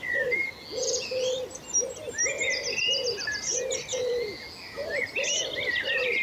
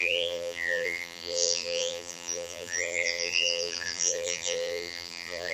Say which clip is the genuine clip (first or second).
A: first